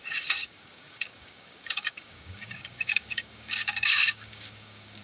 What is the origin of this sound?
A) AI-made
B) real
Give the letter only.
A